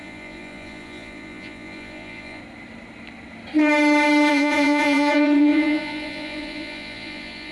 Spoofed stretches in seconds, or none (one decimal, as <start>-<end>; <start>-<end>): 0.0-2.4; 4.3-7.5